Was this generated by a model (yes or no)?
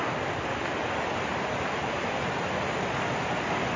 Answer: no